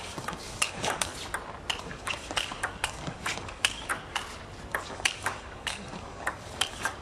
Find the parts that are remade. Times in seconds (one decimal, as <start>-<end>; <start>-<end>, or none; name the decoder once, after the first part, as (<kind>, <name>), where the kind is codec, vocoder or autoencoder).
0.0-1.1 (codec, DAC); 1.8-3.9; 4.7-7.0